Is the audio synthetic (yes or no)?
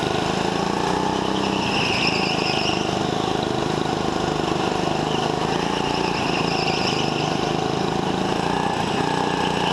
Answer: no